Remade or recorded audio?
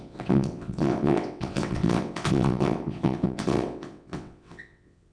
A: remade